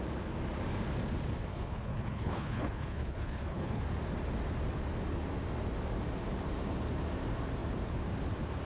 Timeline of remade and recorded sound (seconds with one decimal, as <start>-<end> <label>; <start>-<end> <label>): 0.0-1.5 recorded; 1.5-3.8 remade; 3.8-8.6 recorded